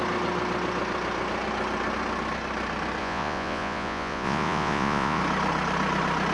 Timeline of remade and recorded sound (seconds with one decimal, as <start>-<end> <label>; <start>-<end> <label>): 0.0-3.0 recorded; 3.0-5.2 remade; 5.2-6.3 recorded